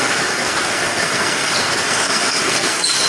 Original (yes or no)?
no